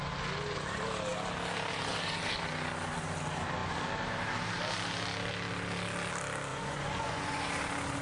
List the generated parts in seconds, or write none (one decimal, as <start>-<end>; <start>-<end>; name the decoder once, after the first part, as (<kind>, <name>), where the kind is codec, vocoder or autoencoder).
6.5-7.4 (vocoder, Vocos)